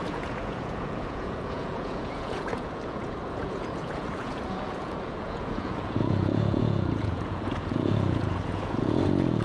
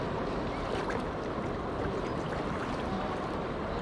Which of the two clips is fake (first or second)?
first